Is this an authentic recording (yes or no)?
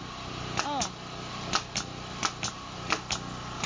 yes